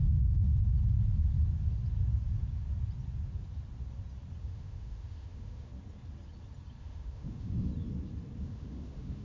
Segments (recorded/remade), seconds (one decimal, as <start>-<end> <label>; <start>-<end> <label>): 0.0-0.5 remade; 0.5-4.4 recorded; 4.4-5.7 remade; 5.7-6.8 recorded; 6.8-7.7 remade; 7.7-8.4 recorded; 8.4-9.2 remade